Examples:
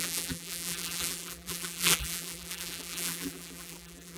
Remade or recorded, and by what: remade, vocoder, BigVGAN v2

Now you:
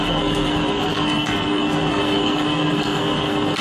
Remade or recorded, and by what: remade, codec, SNAC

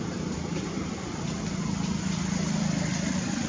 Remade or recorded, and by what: recorded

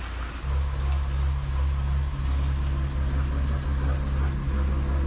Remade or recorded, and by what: recorded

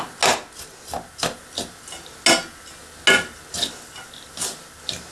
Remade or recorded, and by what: recorded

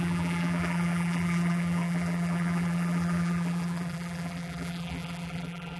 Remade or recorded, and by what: remade, vocoder, BigVGAN v2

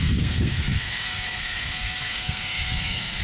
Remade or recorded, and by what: remade, codec, SNAC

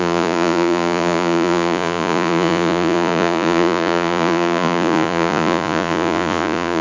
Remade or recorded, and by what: remade, vocoder, Vocos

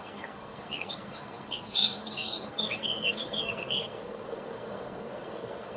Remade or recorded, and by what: remade, codec, SNAC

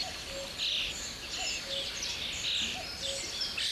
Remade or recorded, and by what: recorded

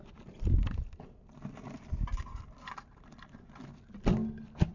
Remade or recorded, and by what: recorded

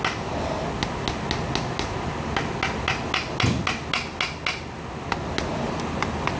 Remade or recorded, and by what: recorded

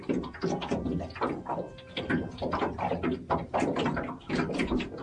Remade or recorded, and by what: recorded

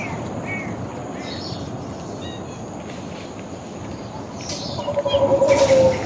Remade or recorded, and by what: recorded